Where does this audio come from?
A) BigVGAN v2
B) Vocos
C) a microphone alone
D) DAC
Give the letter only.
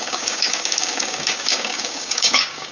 D